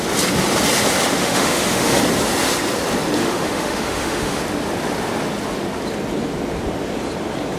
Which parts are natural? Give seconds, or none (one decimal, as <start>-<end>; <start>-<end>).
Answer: 0.0-1.2; 2.0-3.2; 4.4-7.6